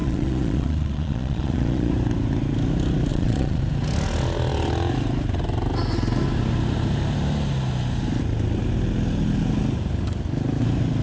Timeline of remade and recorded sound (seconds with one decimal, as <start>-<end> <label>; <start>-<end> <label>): 0.0-1.9 remade; 1.9-3.1 recorded; 3.1-3.6 remade; 3.6-11.0 recorded